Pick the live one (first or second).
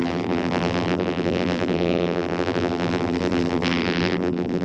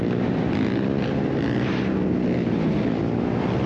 second